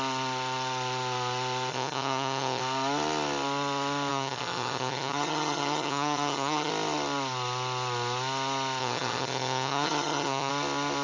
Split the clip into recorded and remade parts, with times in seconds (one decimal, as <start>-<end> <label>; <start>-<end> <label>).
0.0-1.7 recorded; 1.7-2.6 remade; 2.6-4.1 recorded; 4.1-6.7 remade; 6.7-8.8 recorded; 8.8-10.5 remade; 10.5-11.0 recorded